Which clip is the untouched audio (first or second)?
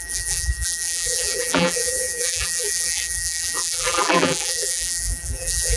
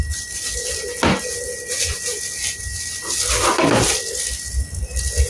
second